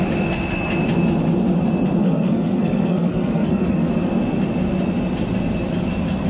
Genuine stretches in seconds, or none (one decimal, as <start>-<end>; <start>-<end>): 0.0-2.0; 3.9-6.3